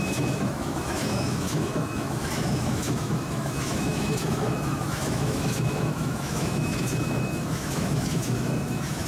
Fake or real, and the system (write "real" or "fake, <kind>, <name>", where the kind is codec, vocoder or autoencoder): fake, autoencoder, DAC-VAE